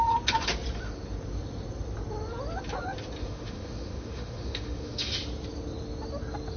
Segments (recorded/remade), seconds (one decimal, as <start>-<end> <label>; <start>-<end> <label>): 0.0-3.2 recorded; 3.2-5.2 remade; 5.2-6.6 recorded